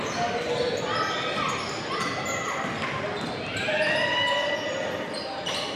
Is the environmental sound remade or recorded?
recorded